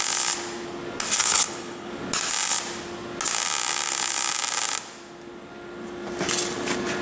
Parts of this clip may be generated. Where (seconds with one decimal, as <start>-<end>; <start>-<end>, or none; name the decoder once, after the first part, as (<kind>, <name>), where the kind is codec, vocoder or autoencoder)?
1.2-1.9 (codec, HILCodec)